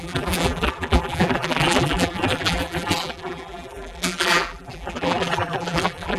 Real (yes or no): no